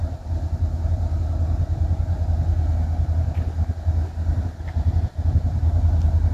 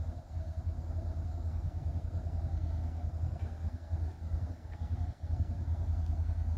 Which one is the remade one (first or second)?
second